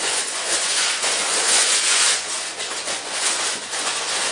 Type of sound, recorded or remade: remade